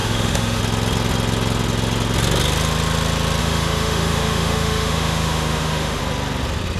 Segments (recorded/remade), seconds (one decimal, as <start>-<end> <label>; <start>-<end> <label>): 0.0-0.6 remade; 0.6-3.4 recorded; 3.4-6.0 remade; 6.0-6.8 recorded